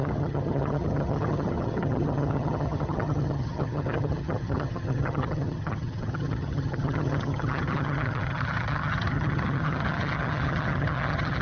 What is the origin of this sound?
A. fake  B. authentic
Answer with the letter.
A